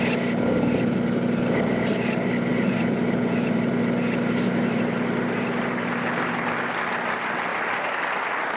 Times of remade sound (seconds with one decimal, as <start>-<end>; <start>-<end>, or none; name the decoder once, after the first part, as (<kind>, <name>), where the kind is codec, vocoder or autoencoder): none